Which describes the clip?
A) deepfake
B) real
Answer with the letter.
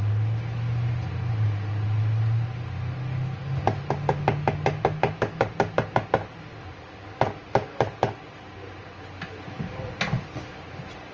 B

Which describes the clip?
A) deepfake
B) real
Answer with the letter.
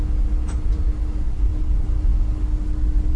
B